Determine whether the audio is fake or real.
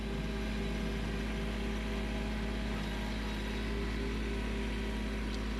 real